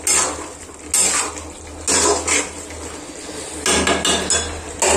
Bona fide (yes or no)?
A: yes